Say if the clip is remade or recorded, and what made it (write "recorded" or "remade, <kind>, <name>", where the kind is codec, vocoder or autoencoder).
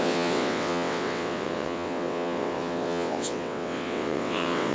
remade, vocoder, WaveNeXt